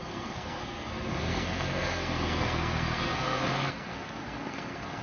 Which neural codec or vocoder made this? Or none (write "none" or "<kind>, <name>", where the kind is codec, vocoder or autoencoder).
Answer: codec, SNAC